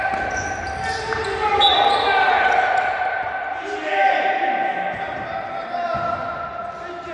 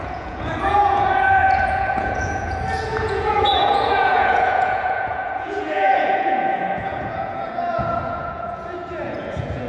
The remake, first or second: second